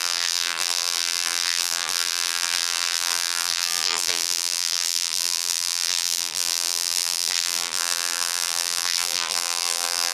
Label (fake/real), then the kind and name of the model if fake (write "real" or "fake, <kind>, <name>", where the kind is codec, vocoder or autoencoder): fake, vocoder, BigVGAN v2